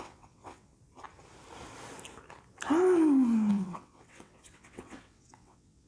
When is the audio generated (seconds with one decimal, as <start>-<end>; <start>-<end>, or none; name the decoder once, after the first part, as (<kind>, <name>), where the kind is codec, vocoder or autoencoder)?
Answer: 0.0-0.7 (vocoder, WaveNeXt); 3.5-5.9